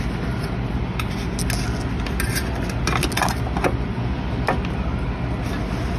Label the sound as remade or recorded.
recorded